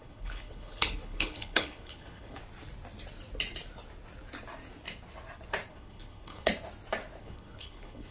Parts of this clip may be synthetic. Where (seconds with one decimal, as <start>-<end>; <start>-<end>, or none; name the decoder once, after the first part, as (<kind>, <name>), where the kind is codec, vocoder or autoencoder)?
0.0-2.4 (codec, HILCodec); 5.7-6.5; 7.2-8.1